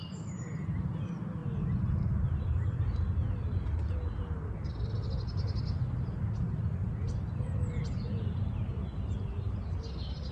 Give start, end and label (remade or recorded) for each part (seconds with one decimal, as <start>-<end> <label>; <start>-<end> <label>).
0.0-10.3 recorded